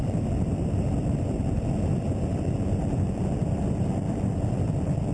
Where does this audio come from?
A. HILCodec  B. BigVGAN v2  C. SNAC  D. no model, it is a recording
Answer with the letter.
D